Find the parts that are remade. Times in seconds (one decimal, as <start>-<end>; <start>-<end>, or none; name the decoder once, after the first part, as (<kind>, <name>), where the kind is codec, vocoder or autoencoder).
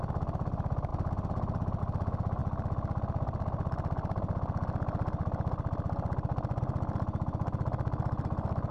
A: none